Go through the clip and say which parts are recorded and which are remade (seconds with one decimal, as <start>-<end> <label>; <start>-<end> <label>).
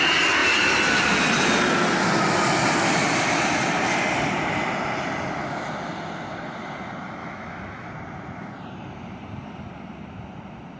0.0-7.2 recorded; 7.2-7.9 remade; 7.9-10.8 recorded